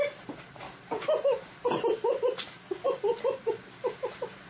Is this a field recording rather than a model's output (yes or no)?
yes